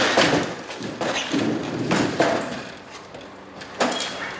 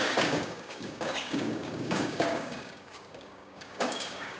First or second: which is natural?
first